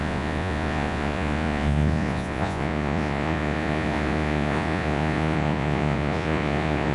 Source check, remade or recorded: remade